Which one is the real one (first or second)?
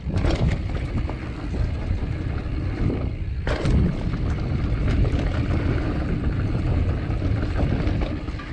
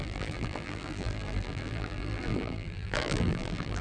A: first